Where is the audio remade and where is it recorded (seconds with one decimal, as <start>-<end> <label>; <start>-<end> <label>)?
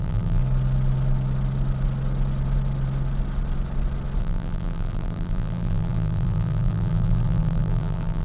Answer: 0.0-0.4 remade; 0.4-4.2 recorded; 4.2-8.2 remade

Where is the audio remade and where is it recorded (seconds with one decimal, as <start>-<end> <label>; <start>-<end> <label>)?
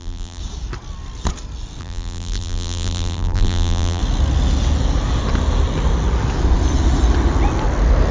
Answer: 0.0-0.4 remade; 0.4-1.8 recorded; 1.8-4.0 remade; 4.0-8.1 recorded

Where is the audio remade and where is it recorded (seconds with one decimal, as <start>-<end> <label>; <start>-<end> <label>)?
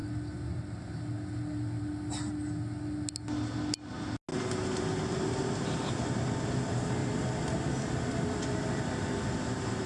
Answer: 0.0-7.0 recorded; 7.0-9.9 remade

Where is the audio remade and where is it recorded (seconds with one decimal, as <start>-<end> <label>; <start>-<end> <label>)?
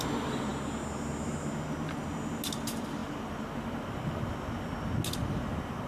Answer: 0.0-5.9 recorded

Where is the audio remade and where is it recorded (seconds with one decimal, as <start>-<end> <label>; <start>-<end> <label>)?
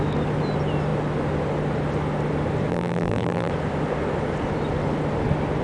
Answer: 0.0-2.7 recorded; 2.7-3.5 remade; 3.5-5.6 recorded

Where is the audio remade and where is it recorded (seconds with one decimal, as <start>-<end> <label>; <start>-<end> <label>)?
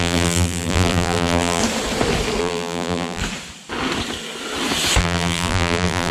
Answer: 0.0-1.6 remade; 1.6-2.4 recorded; 2.4-3.2 remade; 3.2-5.0 recorded; 5.0-6.1 remade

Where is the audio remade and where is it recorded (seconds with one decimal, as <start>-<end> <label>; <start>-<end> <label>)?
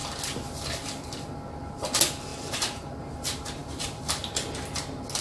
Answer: 0.0-2.3 recorded; 2.3-2.9 remade; 2.9-3.6 recorded; 3.6-4.2 remade; 4.2-5.2 recorded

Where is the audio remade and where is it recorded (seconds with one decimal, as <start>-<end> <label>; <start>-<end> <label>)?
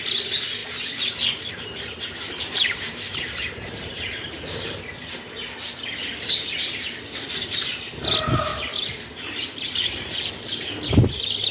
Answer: 0.0-2.6 recorded; 2.6-4.3 remade; 4.3-8.5 recorded; 8.5-10.3 remade; 10.3-11.5 recorded